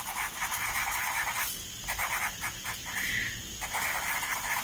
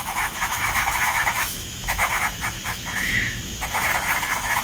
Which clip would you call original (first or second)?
first